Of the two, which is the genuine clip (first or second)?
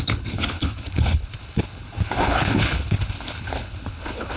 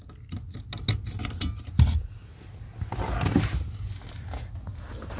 second